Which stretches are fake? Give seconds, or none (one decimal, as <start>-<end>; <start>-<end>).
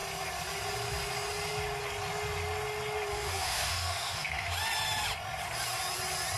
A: 3.1-4.5